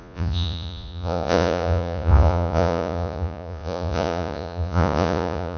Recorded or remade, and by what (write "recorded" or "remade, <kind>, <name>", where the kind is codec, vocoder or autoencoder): remade, vocoder, Vocos